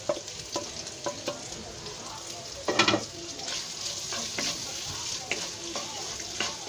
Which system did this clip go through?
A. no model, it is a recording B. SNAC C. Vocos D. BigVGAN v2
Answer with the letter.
A